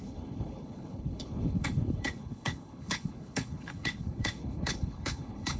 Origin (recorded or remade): remade